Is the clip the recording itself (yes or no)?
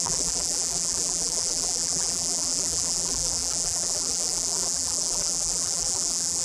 no